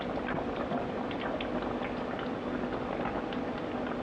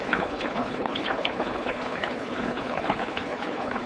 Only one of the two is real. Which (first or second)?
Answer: first